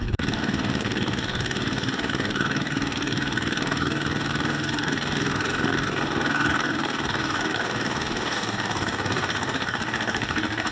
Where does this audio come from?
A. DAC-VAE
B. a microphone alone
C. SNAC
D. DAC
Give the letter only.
D